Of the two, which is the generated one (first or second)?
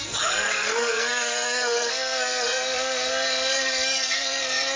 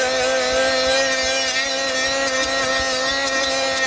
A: first